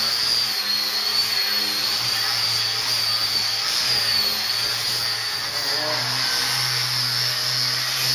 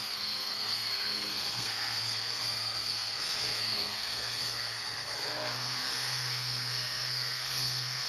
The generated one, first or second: second